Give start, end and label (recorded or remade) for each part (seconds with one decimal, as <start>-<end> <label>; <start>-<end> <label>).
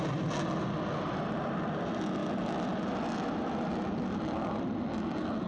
0.0-5.5 recorded